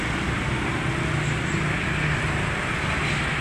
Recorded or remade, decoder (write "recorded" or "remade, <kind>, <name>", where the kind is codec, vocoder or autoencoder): remade, vocoder, BigVGAN v2